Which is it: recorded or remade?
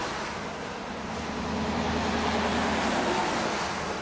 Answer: recorded